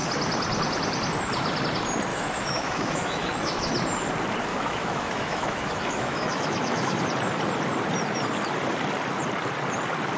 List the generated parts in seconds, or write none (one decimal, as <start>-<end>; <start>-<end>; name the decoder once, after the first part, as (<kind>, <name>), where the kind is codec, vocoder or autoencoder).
2.1-3.7 (autoencoder, DAC-VAE); 4.5-7.0